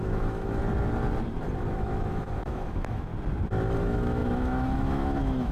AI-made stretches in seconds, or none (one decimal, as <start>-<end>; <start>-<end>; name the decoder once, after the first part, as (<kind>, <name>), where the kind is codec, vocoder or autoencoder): 0.0-0.6 (autoencoder, DAC-VAE); 1.7-3.1; 3.8-5.5